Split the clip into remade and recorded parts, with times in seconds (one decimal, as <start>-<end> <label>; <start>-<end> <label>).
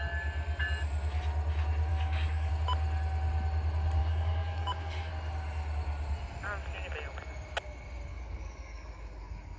0.0-1.9 recorded; 1.9-2.5 remade; 2.5-4.0 recorded; 4.0-5.1 remade; 5.1-8.1 recorded; 8.1-9.6 remade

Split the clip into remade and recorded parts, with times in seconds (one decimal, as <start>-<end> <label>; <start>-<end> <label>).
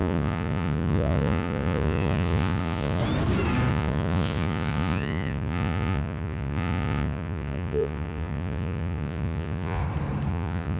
0.0-3.0 remade; 3.0-3.7 recorded; 3.7-9.8 remade; 9.8-10.3 recorded; 10.3-10.8 remade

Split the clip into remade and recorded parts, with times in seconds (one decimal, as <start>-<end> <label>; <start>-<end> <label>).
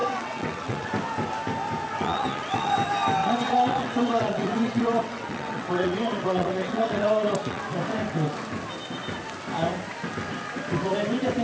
0.0-0.9 remade; 0.9-2.0 recorded; 2.0-2.7 remade; 2.7-3.2 recorded; 3.2-7.6 remade; 7.6-11.4 recorded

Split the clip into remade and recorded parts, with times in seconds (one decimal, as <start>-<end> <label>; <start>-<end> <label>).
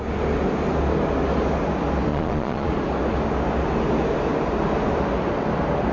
0.0-2.1 recorded; 2.1-2.7 remade; 2.7-5.9 recorded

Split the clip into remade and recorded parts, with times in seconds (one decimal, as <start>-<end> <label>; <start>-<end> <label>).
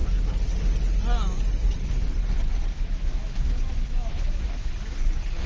0.0-2.7 recorded; 2.7-4.7 remade; 4.7-5.5 recorded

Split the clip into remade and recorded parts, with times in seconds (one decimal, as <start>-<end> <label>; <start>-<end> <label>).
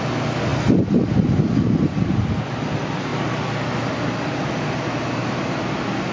0.0-6.1 recorded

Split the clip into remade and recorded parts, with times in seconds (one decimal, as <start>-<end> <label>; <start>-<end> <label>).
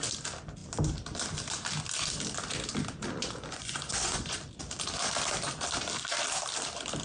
0.0-3.2 recorded; 3.2-4.4 remade; 4.4-7.0 recorded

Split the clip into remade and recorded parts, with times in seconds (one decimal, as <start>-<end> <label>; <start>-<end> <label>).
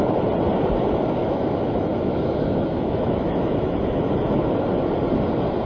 0.0-1.2 recorded; 1.2-4.4 remade; 4.4-5.6 recorded